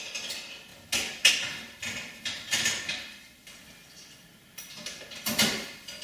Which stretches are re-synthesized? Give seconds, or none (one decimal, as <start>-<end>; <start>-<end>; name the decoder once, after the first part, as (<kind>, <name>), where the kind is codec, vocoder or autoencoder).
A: none